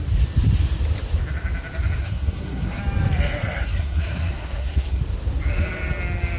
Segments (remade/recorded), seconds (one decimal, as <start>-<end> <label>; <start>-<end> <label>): 0.0-2.0 recorded; 2.0-2.8 remade; 2.8-3.4 recorded; 3.4-5.0 remade; 5.0-6.4 recorded